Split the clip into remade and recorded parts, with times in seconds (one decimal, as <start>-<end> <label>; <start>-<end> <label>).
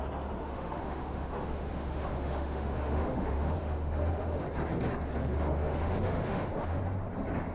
0.0-0.4 recorded; 0.4-4.4 remade; 4.4-5.2 recorded; 5.2-6.8 remade; 6.8-7.5 recorded